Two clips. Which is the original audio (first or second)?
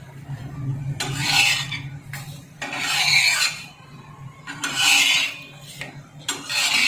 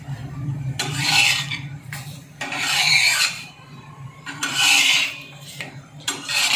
first